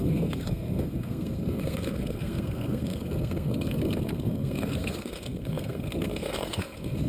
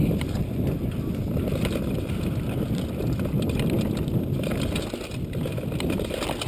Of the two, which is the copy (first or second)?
first